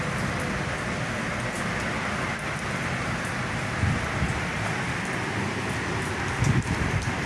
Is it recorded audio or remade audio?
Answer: remade